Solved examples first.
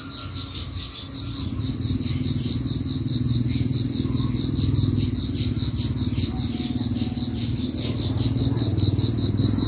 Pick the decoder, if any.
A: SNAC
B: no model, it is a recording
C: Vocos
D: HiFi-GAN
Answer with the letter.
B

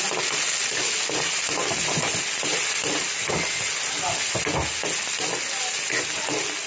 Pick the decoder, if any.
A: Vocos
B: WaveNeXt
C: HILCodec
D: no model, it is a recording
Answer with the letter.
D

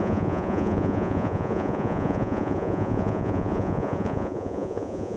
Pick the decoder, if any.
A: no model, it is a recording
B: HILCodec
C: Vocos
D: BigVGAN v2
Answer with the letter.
C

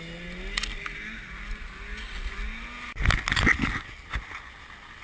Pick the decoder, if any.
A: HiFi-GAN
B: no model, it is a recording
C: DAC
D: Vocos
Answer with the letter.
B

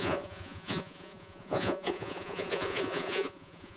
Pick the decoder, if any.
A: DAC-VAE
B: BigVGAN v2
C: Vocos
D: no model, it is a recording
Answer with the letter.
C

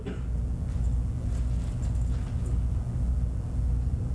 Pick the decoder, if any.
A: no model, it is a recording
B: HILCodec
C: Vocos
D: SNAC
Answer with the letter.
A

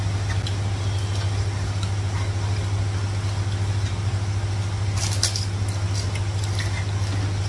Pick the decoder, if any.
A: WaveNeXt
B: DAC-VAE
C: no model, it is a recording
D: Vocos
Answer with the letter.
C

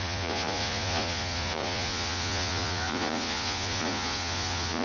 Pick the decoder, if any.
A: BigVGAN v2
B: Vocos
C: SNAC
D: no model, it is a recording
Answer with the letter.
B